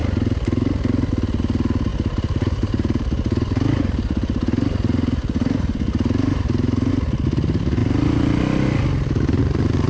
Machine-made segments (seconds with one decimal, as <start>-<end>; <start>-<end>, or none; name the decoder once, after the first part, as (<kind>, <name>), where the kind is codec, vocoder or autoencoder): 1.9-6.9 (vocoder, BigVGAN v2)